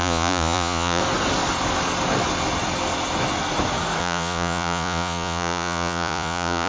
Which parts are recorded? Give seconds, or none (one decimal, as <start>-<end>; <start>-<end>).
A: 1.0-4.0